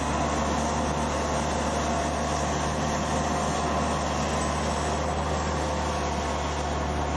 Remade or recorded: recorded